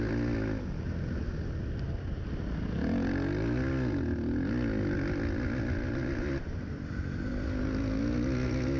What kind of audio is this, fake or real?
real